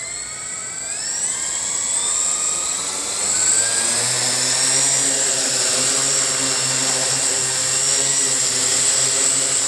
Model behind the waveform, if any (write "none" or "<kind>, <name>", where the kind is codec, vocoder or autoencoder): none